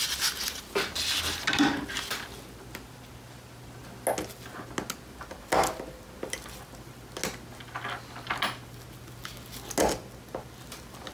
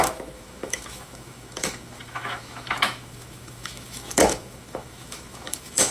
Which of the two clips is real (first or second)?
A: first